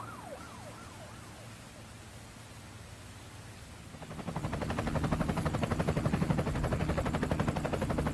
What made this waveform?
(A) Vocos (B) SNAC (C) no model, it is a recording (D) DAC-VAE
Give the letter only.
C